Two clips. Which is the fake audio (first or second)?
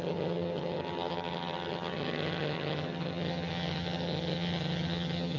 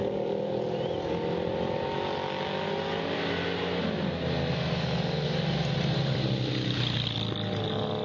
first